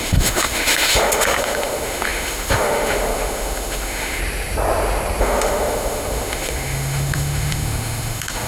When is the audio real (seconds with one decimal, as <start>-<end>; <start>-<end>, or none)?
4.2-5.2